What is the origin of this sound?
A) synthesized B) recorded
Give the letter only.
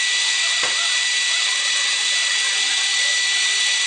B